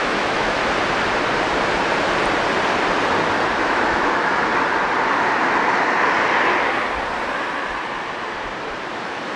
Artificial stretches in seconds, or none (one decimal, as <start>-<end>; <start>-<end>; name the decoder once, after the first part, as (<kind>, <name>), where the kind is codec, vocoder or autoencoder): 0.0-0.6 (autoencoder, DAC-VAE); 3.6-4.5; 9.0-9.4